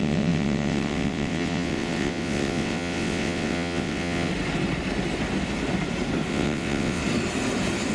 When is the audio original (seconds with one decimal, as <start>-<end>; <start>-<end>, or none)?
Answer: 4.3-6.3; 7.0-7.9